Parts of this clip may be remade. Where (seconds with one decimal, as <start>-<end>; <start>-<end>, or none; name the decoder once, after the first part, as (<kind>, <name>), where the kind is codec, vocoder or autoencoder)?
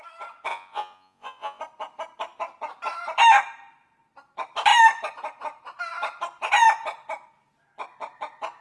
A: 0.5-1.6 (vocoder, Vocos)